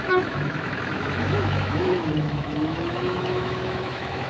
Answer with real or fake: fake